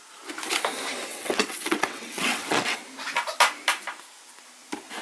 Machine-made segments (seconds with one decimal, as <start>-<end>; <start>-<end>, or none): 1.1-2.8